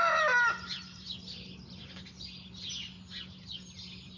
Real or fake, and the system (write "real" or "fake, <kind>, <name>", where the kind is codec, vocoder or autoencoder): real